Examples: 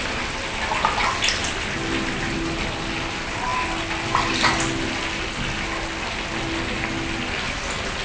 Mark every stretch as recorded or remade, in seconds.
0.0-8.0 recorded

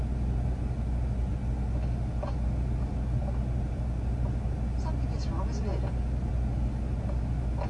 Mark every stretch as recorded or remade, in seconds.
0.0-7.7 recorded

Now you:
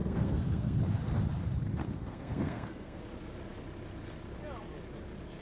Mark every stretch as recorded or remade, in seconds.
0.0-0.8 remade; 0.8-1.8 recorded; 1.8-3.0 remade; 3.0-5.4 recorded

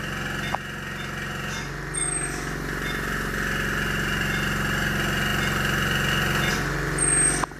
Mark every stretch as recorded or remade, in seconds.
0.0-7.6 recorded

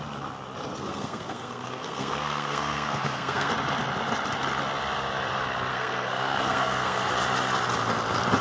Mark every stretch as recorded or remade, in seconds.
0.0-0.8 recorded; 0.8-3.5 remade; 3.5-5.7 recorded; 5.7-7.1 remade; 7.1-8.4 recorded

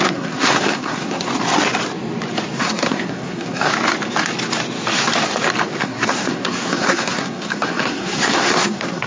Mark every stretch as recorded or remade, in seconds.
0.0-1.3 remade; 1.3-2.6 recorded; 2.6-3.7 remade; 3.7-5.8 recorded; 5.8-9.1 remade

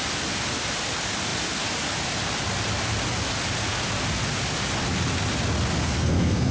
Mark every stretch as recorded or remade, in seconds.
0.0-5.8 recorded; 5.8-6.5 remade

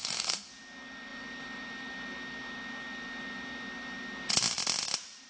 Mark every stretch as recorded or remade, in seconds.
0.0-0.5 remade; 0.5-5.3 recorded